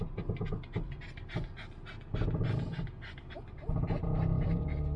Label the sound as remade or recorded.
recorded